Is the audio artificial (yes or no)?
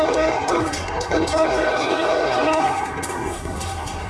yes